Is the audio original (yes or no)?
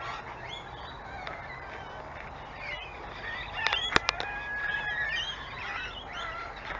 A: yes